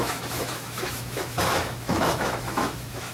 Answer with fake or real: fake